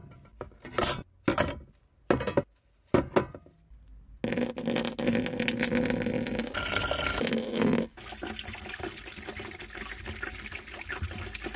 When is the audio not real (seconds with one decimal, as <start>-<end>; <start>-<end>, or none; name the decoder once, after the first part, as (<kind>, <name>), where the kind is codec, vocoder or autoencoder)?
none